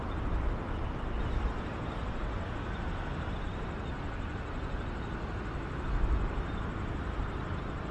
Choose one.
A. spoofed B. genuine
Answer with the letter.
B